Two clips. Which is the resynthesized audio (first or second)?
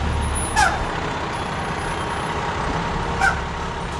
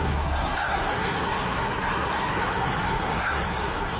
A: second